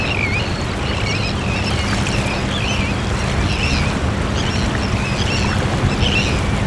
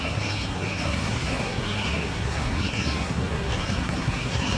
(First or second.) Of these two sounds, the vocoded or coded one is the second